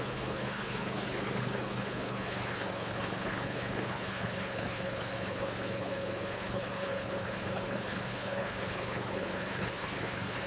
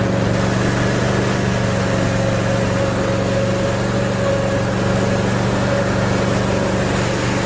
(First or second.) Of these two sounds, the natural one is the second